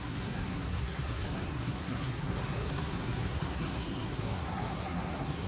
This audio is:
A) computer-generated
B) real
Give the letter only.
A